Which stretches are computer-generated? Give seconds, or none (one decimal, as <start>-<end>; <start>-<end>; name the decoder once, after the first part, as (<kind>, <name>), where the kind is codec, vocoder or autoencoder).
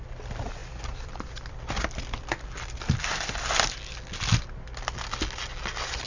0.6-1.3 (vocoder, BigVGAN v2)